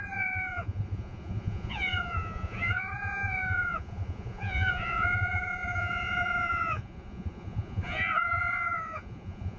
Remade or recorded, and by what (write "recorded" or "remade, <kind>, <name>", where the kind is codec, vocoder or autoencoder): remade, vocoder, Vocos